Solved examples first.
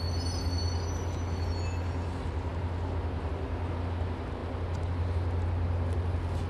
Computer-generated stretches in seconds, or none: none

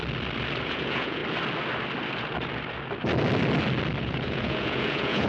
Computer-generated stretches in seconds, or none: 0.6-1.2 (vocoder, Vocos); 4.0-5.3

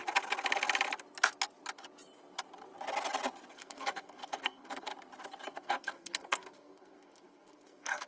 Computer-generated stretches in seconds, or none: 3.5-4.9 (codec, SNAC); 5.5-8.1

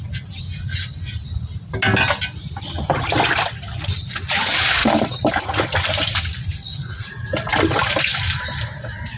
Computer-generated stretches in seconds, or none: none